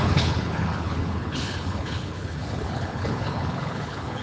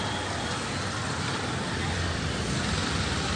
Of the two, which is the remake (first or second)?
first